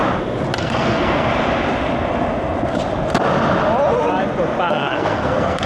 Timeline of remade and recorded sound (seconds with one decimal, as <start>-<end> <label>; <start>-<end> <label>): 0.0-0.6 recorded; 0.6-1.3 remade; 1.3-4.7 recorded; 4.7-5.7 remade